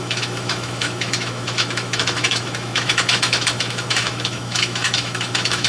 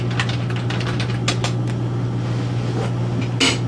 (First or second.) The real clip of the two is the second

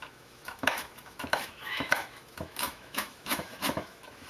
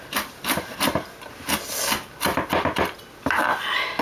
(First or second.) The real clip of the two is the second